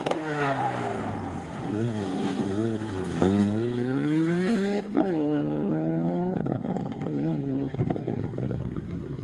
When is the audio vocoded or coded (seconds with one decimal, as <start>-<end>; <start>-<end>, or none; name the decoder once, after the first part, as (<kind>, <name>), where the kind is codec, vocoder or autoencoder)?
0.0-0.6 (codec, SNAC); 1.6-9.2